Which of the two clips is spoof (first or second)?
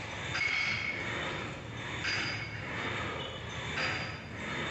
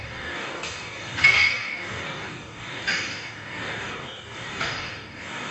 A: second